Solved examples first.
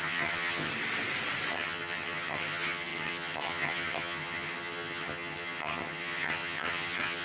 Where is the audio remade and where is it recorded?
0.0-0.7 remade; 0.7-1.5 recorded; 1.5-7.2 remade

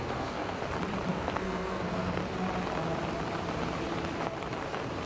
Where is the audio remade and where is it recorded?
0.0-0.6 remade; 0.6-1.1 recorded; 1.1-2.2 remade; 2.2-5.1 recorded

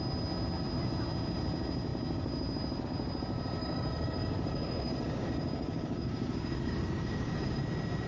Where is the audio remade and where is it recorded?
0.0-3.6 recorded; 3.6-7.6 remade; 7.6-8.1 recorded

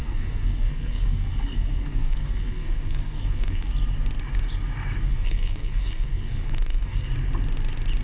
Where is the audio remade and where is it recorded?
0.0-3.7 remade; 3.7-5.1 recorded; 5.1-7.1 remade; 7.1-8.0 recorded